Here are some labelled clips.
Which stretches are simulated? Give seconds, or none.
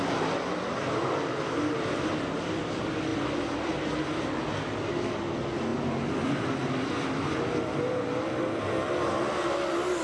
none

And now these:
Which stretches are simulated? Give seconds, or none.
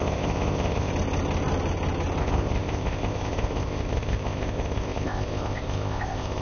0.0-0.9 (codec, ZipCodec); 2.2-6.4